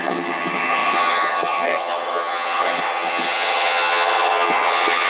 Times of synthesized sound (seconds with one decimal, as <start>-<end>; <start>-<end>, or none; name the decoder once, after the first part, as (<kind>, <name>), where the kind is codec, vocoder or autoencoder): 0.0-5.1 (vocoder, HiFi-GAN)